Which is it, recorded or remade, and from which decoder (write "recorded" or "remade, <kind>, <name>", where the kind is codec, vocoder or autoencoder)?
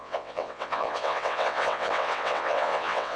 remade, vocoder, WaveNeXt